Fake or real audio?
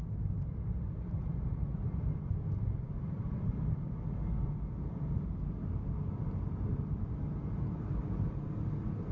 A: real